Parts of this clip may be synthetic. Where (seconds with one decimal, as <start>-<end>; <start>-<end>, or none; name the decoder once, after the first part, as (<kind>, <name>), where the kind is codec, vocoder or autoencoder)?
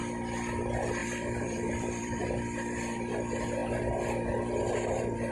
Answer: 1.0-2.2 (vocoder, BigVGAN v2)